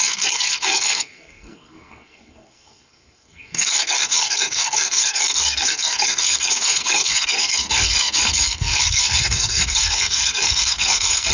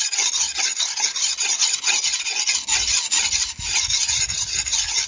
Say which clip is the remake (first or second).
first